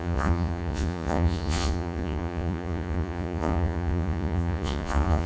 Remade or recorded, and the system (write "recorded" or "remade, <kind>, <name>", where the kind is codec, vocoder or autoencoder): remade, vocoder, Vocos